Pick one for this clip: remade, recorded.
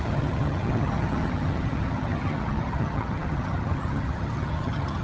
remade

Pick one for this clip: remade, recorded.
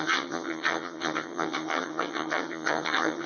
remade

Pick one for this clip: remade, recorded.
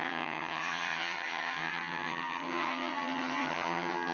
remade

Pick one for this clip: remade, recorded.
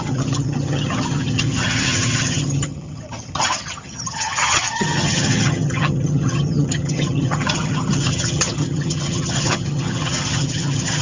remade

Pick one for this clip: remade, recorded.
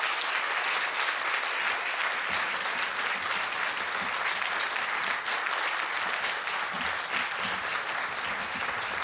recorded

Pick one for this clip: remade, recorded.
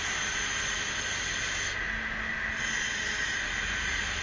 recorded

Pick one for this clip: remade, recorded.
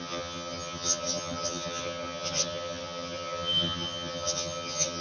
remade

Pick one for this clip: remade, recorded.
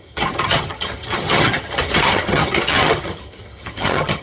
remade